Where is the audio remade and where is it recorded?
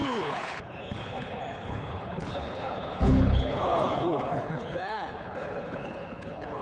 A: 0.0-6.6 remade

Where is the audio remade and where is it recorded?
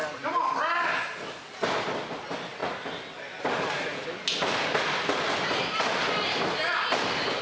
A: 0.0-7.4 recorded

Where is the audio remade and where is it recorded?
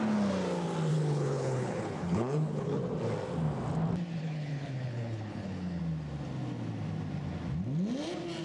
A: 0.0-0.9 recorded; 0.9-2.8 remade; 2.8-4.2 recorded; 4.2-5.8 remade; 5.8-8.4 recorded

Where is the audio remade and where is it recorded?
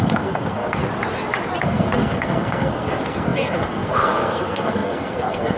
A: 0.0-0.8 remade; 0.8-1.6 recorded; 1.6-5.6 remade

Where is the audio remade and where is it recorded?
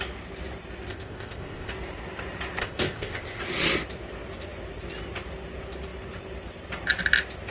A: 0.0-0.9 recorded; 0.9-1.7 remade; 1.7-2.6 recorded; 2.6-3.4 remade; 3.4-7.5 recorded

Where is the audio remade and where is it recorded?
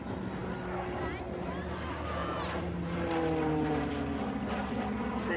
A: 0.0-2.2 recorded; 2.2-3.9 remade; 3.9-5.4 recorded